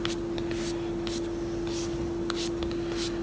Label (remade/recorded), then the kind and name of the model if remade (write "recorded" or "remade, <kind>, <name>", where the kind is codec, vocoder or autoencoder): recorded